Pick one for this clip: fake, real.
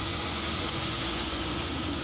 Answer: fake